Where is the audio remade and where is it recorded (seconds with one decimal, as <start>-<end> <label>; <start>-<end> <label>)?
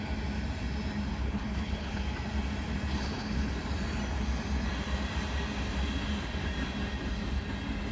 0.0-1.2 recorded; 1.2-2.0 remade; 2.0-2.9 recorded; 2.9-3.5 remade; 3.5-7.9 recorded